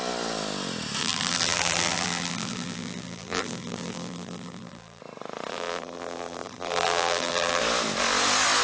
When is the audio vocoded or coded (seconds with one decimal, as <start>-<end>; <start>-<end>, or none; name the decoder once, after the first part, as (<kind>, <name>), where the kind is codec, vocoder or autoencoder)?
1.0-5.0 (vocoder, BigVGAN v2); 5.5-7.6